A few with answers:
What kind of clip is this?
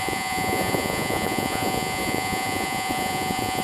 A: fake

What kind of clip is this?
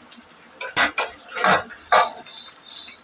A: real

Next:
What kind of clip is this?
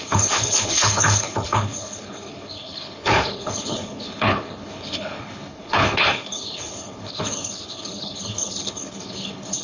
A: fake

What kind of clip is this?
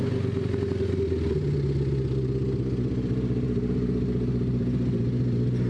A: real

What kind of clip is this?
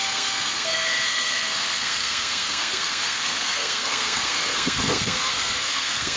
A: fake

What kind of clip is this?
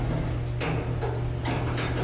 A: real